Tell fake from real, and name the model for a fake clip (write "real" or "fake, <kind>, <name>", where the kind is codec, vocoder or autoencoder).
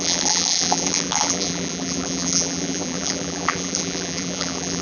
fake, vocoder, BigVGAN v2